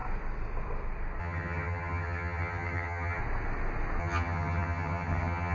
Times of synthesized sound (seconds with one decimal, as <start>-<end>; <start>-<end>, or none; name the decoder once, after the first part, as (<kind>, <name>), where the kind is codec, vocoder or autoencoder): 1.2-3.2 (vocoder, HiFi-GAN); 4.0-5.5